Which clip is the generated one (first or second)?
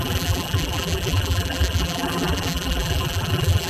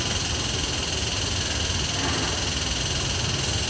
first